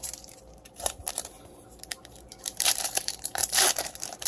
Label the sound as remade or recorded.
remade